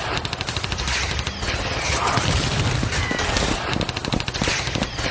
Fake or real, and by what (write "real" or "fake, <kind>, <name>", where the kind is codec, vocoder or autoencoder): fake, vocoder, BigVGAN v2